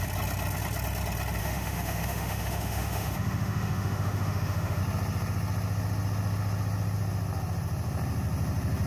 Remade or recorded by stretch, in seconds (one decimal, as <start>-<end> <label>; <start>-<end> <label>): 0.0-1.4 recorded; 1.4-4.8 remade; 4.8-8.9 recorded